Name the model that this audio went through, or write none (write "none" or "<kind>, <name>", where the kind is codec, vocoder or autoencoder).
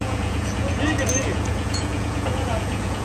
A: vocoder, Vocos